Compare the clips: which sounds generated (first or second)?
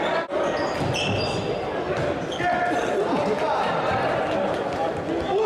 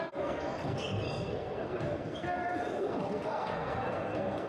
second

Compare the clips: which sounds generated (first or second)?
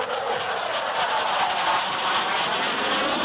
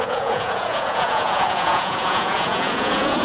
second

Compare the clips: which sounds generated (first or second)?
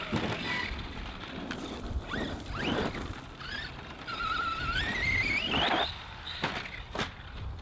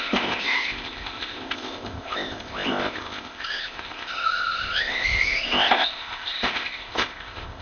second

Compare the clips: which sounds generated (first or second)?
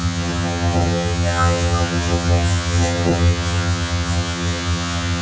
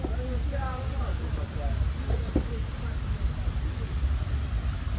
first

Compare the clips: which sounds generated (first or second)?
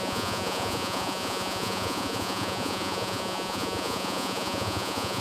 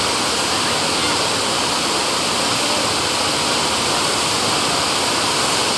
first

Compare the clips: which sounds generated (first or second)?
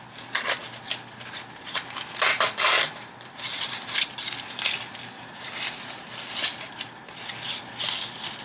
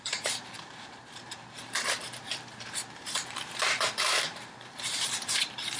second